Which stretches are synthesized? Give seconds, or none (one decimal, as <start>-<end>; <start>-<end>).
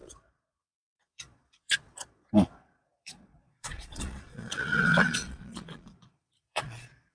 0.0-7.1